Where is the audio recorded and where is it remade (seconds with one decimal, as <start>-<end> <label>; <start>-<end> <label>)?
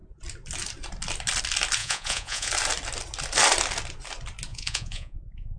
0.0-1.8 recorded; 1.8-2.5 remade; 2.5-4.5 recorded; 4.5-5.6 remade